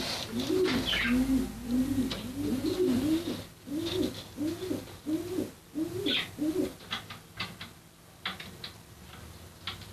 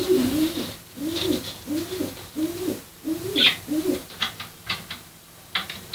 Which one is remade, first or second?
second